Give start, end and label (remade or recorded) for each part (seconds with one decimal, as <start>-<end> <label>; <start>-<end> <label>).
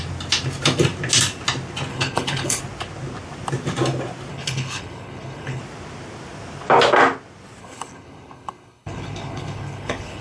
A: 0.0-1.9 recorded; 1.9-2.6 remade; 2.6-4.3 recorded; 4.3-5.6 remade; 5.6-7.6 recorded; 7.6-10.2 remade